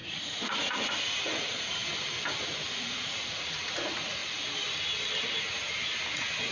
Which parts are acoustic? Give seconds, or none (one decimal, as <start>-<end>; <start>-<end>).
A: 1.8-2.7; 4.2-6.5